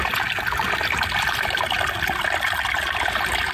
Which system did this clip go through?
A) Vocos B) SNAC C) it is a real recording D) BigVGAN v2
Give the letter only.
C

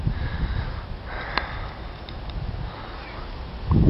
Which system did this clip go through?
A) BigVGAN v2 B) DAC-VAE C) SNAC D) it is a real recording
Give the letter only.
D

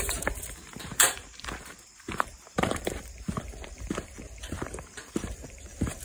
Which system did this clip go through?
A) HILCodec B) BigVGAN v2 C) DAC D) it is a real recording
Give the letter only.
B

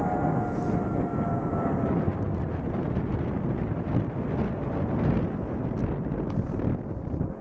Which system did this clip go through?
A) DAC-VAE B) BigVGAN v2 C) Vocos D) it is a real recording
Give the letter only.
D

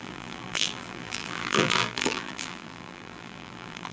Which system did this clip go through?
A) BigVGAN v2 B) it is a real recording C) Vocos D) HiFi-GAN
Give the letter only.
A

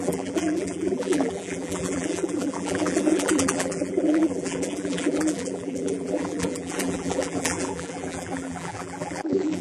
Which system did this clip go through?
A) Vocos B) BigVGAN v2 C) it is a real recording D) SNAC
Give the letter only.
B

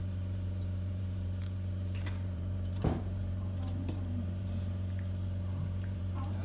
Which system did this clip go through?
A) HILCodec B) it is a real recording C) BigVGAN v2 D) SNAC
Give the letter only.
C